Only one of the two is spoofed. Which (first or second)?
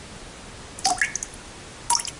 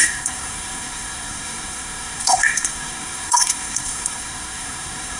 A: second